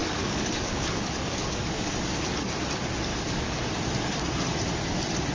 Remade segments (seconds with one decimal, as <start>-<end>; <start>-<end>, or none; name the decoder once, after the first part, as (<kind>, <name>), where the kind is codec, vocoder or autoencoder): 0.0-1.9 (codec, DAC); 3.1-3.6